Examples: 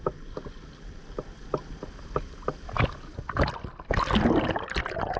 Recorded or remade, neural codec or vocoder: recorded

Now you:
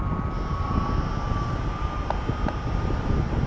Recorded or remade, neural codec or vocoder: recorded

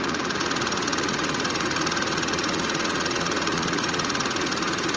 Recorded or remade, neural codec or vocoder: remade, vocoder, Vocos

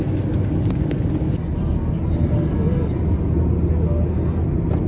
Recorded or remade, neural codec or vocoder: recorded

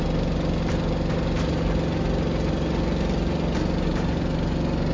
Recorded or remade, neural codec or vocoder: recorded